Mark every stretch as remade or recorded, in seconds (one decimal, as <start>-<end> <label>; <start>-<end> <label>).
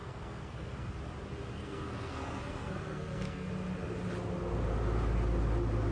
0.0-0.9 remade; 0.9-1.5 recorded; 1.5-3.5 remade; 3.5-5.9 recorded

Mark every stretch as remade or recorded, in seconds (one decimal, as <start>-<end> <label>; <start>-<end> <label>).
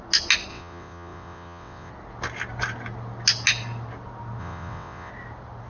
0.0-0.5 recorded; 0.5-1.9 remade; 1.9-4.4 recorded; 4.4-5.1 remade; 5.1-5.7 recorded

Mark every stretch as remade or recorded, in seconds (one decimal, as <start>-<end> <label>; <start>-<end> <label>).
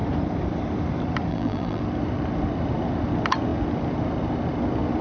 0.0-1.3 recorded; 1.3-1.8 remade; 1.8-5.0 recorded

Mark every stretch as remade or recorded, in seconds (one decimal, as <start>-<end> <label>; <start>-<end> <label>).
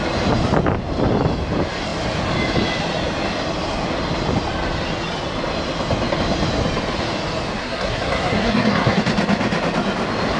0.0-7.6 recorded; 7.6-9.0 remade; 9.0-10.4 recorded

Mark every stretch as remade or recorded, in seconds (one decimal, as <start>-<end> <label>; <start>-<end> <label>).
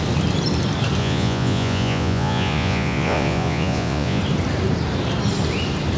0.0-1.0 recorded; 1.0-4.2 remade; 4.2-6.0 recorded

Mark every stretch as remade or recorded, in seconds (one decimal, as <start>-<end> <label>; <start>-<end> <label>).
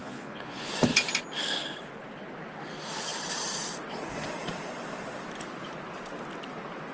0.0-0.7 remade; 0.7-6.9 recorded